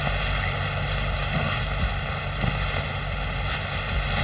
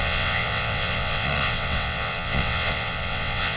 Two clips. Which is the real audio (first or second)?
first